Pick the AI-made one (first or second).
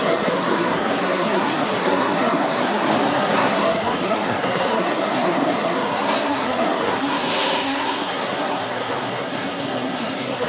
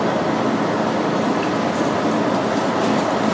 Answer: first